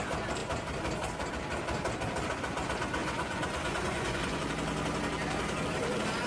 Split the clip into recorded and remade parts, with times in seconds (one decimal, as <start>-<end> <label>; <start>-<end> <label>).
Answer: 0.0-3.0 recorded; 3.0-4.5 remade; 4.5-6.3 recorded